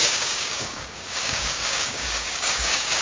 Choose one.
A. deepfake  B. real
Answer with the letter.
A